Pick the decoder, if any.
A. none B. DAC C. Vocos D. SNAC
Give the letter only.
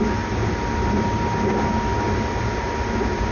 A